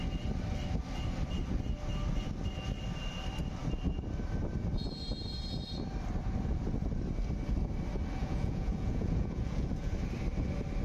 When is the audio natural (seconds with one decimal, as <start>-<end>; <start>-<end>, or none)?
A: 0.0-8.2; 9.9-10.8